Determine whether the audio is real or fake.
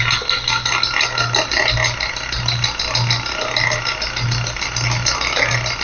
real